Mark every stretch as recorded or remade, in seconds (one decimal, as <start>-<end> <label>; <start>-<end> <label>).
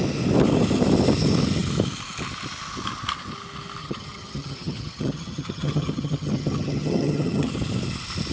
0.0-3.8 recorded; 3.8-7.5 remade; 7.5-8.3 recorded